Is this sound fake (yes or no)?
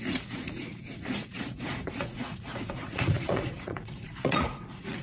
yes